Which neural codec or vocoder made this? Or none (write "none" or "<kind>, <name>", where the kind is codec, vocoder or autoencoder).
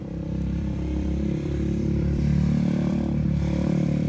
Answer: vocoder, BigVGAN v2